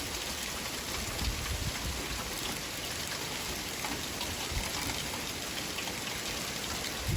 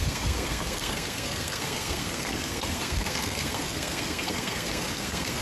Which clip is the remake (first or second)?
second